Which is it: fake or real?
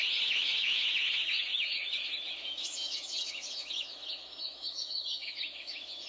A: fake